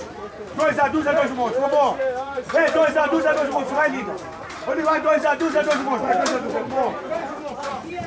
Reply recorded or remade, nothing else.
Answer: remade